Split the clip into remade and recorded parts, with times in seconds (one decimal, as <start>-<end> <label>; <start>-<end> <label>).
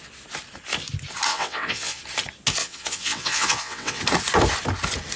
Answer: 0.0-1.3 recorded; 1.3-2.0 remade; 2.0-2.6 recorded; 2.6-4.0 remade; 4.0-5.2 recorded